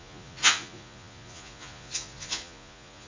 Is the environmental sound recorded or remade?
remade